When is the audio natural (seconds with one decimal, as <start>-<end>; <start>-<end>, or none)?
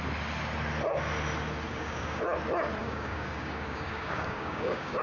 0.0-1.7; 2.2-2.8